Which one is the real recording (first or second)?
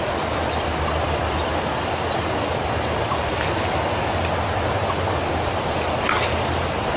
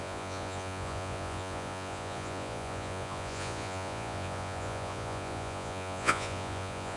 first